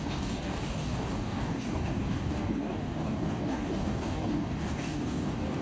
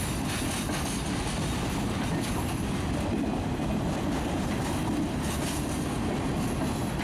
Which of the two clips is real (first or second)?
second